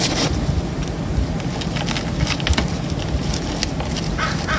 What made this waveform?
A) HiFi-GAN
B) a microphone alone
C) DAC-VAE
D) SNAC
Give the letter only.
B